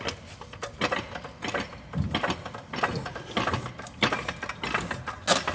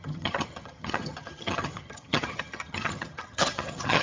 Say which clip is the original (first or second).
first